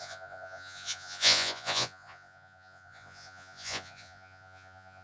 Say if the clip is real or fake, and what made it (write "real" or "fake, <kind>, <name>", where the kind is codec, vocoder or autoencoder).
fake, vocoder, Vocos